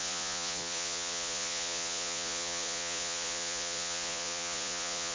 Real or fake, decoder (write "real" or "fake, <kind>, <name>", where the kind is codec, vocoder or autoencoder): fake, vocoder, Vocos